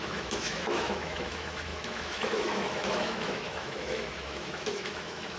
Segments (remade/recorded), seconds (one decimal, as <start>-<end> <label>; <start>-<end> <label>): 0.0-5.4 remade